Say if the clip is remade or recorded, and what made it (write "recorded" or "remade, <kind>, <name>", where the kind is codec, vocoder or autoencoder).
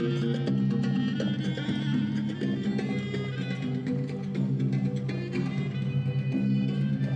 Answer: recorded